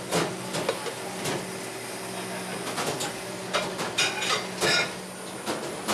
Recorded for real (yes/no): yes